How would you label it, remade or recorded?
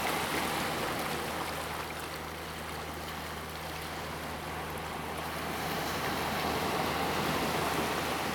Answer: recorded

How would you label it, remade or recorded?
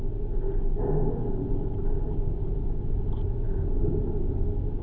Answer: recorded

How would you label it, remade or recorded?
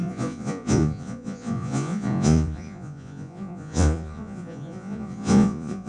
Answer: remade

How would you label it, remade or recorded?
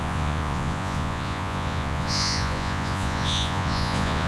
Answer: remade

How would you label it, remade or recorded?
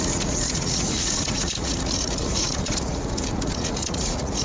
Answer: remade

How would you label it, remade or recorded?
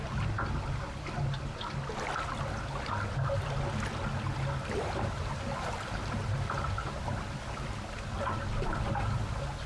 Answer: recorded